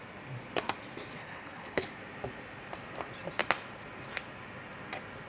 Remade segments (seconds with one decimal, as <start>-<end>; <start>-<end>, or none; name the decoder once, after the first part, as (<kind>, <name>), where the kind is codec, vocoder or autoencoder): 1.2-1.9 (codec, HILCodec)